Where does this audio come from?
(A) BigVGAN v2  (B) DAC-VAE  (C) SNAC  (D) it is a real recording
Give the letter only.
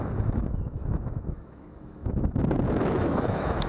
B